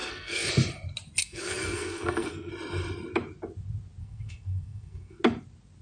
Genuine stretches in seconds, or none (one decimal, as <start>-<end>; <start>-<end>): 0.5-1.2; 2.5-4.0; 5.2-5.8